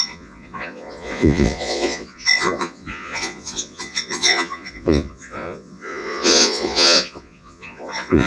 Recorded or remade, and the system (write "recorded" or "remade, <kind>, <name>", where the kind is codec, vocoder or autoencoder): remade, vocoder, Vocos